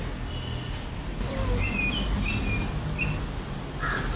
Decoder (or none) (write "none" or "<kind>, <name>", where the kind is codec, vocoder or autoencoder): none